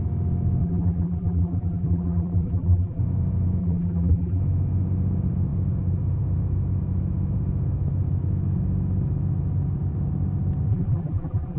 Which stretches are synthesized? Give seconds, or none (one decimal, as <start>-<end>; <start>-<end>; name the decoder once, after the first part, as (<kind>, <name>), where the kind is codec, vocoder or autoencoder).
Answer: 0.6-3.0 (vocoder, BigVGAN v2); 3.6-4.4; 10.7-11.6